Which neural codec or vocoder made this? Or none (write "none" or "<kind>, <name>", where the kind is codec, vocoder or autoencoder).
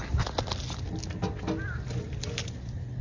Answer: none